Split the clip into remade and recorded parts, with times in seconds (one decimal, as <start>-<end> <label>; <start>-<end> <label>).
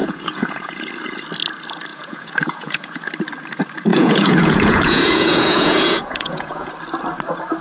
0.0-0.8 remade; 0.8-1.9 recorded; 1.9-3.1 remade; 3.1-3.9 recorded; 3.9-6.7 remade; 6.7-7.6 recorded